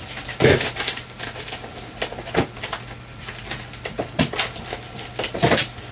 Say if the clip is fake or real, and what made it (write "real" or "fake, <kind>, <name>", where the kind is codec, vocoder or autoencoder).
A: real